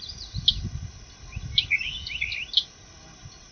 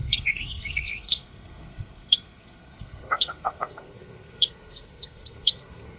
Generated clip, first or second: second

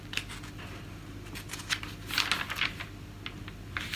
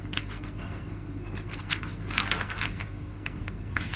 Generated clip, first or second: second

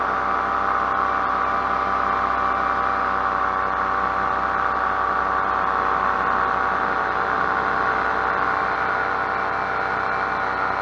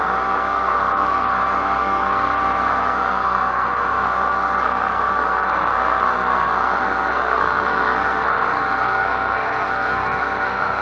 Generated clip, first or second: second